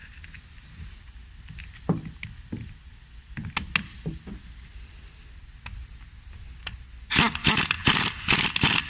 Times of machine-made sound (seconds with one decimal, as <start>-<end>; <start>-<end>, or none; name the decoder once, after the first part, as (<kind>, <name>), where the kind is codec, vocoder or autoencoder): none